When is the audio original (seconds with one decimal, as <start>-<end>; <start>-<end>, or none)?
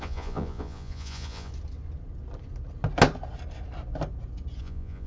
1.5-4.6